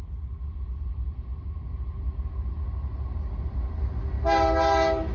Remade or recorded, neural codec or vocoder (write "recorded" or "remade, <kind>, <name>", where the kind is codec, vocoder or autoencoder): recorded